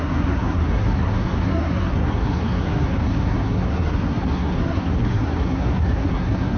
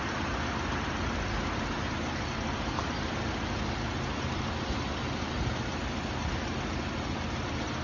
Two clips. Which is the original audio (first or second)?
second